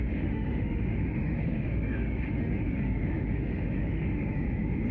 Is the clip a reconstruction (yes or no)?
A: yes